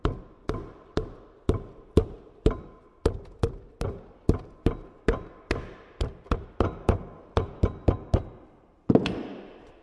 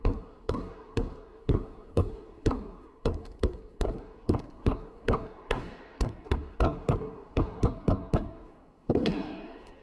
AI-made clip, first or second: second